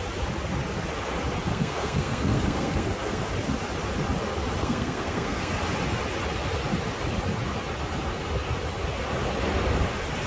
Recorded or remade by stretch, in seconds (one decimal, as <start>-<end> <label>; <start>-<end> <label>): 0.0-1.5 recorded; 1.5-3.3 remade; 3.3-4.6 recorded; 4.6-5.5 remade; 5.5-10.3 recorded